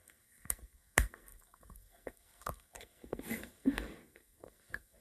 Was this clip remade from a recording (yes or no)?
yes